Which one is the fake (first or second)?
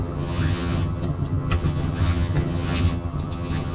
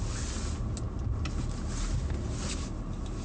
first